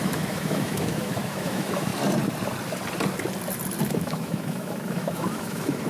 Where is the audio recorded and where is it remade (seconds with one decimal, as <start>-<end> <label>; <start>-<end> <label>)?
0.0-1.9 remade; 1.9-3.8 recorded; 3.8-5.9 remade